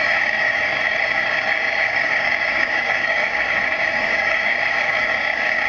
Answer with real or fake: fake